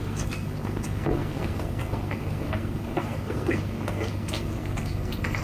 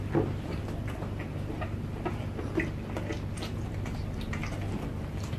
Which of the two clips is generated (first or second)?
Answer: first